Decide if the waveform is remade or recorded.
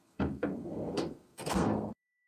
remade